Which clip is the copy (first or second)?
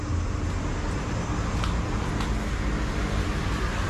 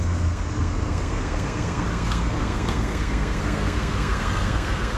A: second